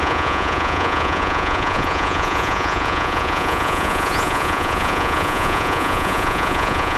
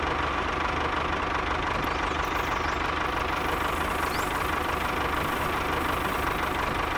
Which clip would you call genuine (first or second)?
second